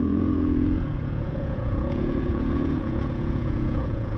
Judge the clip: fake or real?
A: fake